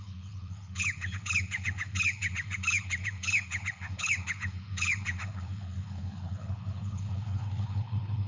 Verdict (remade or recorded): remade